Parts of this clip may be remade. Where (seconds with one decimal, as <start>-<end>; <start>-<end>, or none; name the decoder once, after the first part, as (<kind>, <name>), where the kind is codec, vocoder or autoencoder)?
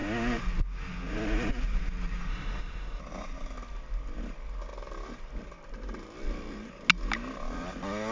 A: 2.3-3.0 (autoencoder, DAC-VAE)